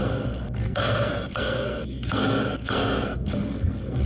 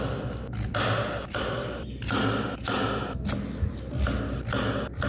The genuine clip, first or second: second